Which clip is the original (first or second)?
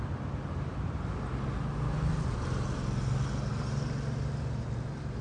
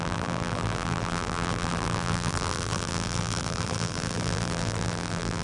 first